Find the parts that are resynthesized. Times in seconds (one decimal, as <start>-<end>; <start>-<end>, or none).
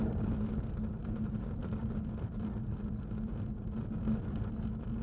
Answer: 1.6-3.6